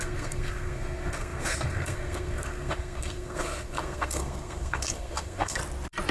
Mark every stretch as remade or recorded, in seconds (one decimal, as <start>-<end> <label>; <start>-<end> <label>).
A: 0.0-5.6 remade; 5.6-6.1 recorded